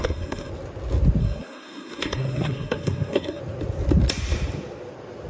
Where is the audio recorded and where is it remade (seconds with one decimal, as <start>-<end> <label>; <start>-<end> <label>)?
0.0-0.5 remade; 0.5-1.2 recorded; 1.2-3.4 remade; 3.4-5.3 recorded